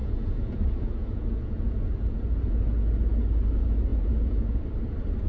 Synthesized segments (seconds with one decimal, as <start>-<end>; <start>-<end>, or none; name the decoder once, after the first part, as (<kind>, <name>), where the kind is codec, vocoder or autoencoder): 0.0-2.6 (vocoder, Vocos); 3.9-4.6